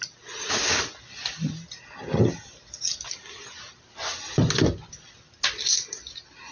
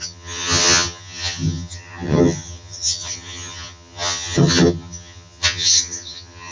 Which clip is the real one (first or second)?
first